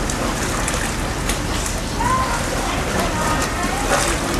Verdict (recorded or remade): recorded